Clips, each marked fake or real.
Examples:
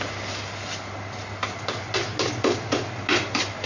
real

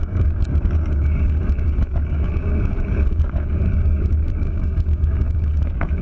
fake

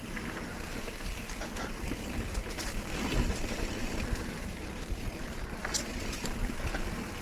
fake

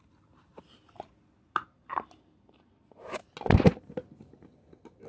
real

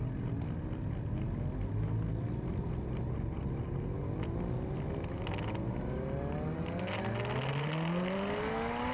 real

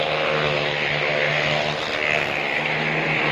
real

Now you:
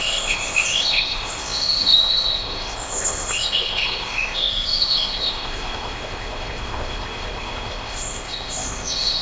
fake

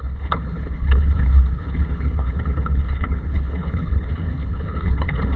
fake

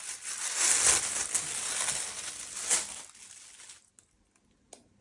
real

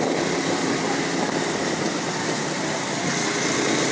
real